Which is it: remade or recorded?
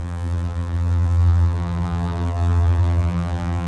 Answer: remade